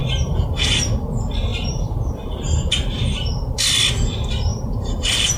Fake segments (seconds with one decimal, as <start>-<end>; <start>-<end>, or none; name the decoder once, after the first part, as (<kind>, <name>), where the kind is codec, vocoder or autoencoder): 0.0-0.9 (vocoder, BigVGAN v2); 1.5-3.3; 4.5-5.4